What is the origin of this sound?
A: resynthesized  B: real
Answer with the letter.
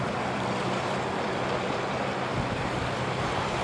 A